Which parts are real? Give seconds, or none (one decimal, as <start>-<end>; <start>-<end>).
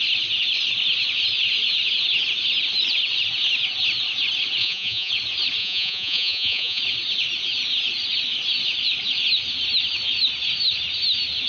0.0-4.6; 5.1-5.6; 6.8-11.5